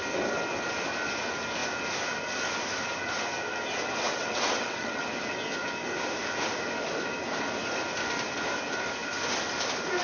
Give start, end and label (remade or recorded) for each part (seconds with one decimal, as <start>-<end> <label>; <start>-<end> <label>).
0.0-4.1 recorded; 4.1-5.0 remade; 5.0-10.0 recorded